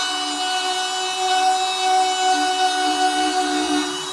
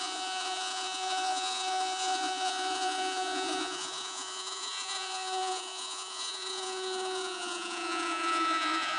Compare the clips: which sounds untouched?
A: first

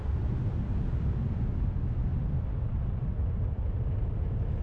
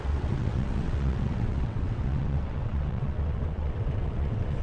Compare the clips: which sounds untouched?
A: first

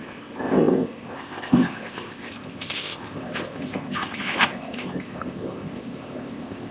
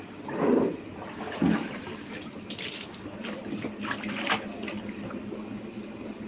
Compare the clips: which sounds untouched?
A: second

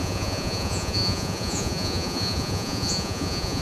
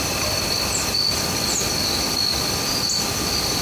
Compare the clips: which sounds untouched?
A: second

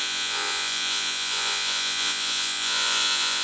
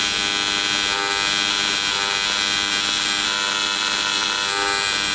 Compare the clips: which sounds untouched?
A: second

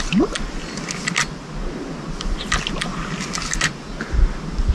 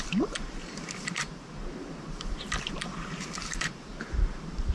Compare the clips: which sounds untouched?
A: first